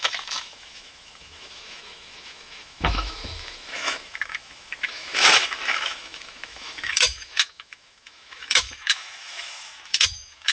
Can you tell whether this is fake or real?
fake